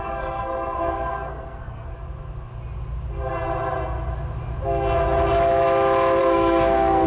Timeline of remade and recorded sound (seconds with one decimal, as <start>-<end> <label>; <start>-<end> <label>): 0.0-1.9 remade; 1.9-6.2 recorded; 6.2-7.1 remade